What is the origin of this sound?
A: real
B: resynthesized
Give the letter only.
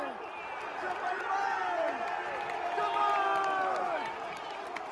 A